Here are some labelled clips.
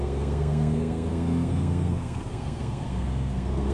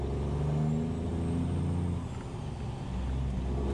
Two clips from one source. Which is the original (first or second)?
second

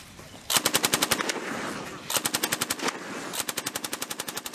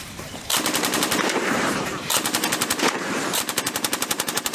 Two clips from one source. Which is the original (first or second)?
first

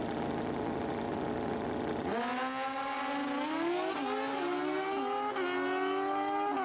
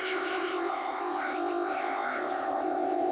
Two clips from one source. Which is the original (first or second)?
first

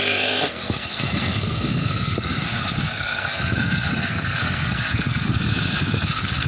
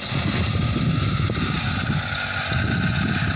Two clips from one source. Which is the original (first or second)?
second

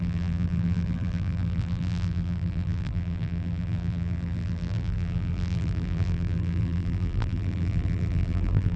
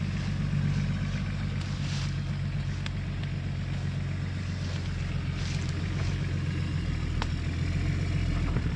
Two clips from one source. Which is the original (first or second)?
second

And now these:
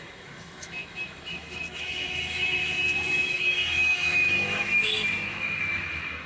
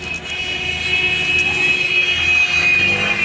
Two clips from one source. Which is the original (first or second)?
second